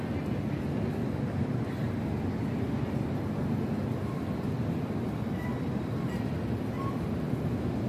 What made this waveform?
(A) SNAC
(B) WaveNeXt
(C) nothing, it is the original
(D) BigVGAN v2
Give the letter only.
C